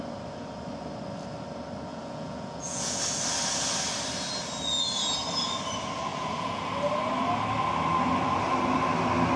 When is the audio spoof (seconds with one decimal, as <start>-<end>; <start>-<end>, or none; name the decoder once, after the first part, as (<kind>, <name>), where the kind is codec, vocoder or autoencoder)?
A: 1.9-3.0 (vocoder, Vocos); 6.1-6.7